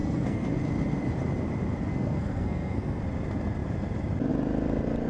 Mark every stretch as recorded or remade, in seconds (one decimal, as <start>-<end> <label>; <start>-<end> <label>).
0.0-0.6 remade; 0.6-1.9 recorded; 1.9-3.0 remade; 3.0-5.1 recorded